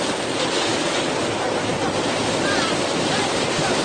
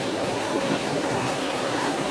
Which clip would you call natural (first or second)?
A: first